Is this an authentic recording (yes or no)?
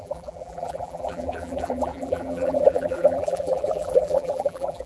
no